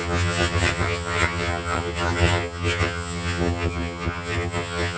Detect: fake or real fake